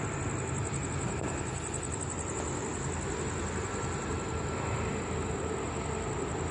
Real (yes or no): yes